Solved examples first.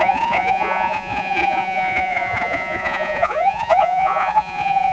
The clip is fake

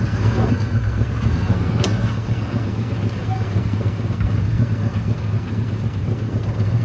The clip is fake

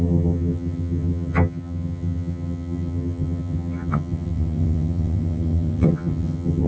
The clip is fake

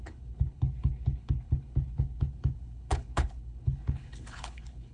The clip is fake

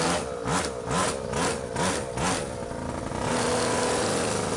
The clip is real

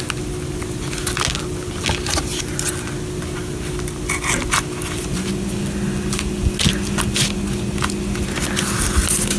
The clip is real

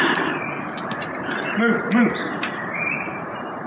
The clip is fake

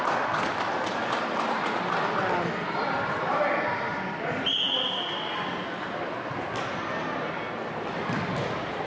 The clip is real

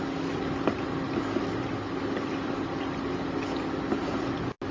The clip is real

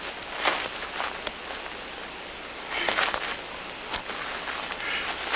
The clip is real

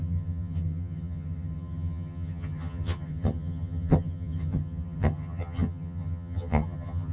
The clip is fake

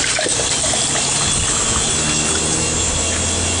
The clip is real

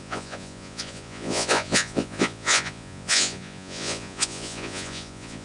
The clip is fake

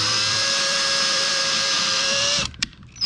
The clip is fake